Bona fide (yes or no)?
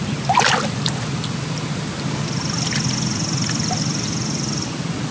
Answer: yes